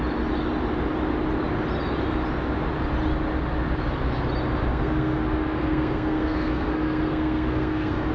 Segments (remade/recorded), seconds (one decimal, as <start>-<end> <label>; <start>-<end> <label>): 0.0-4.7 recorded; 4.7-8.1 remade